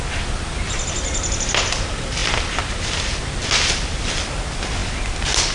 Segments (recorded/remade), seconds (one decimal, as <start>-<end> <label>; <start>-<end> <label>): 0.0-5.5 recorded